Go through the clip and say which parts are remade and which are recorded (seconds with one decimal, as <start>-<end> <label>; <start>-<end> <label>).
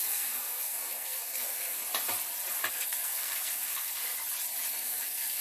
0.0-1.8 remade; 1.8-2.7 recorded; 2.7-4.1 remade; 4.1-4.7 recorded; 4.7-5.4 remade